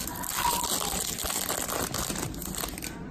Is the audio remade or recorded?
recorded